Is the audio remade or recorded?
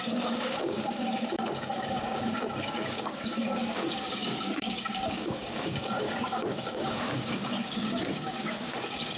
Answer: remade